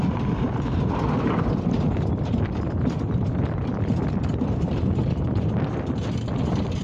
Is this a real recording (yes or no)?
yes